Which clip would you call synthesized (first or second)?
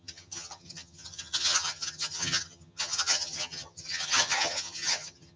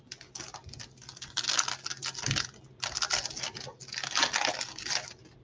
first